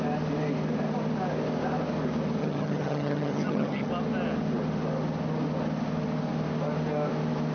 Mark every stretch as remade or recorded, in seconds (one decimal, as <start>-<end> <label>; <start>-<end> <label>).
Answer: 0.0-2.4 recorded; 2.4-3.9 remade; 3.9-7.5 recorded